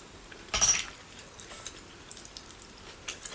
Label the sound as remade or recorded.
recorded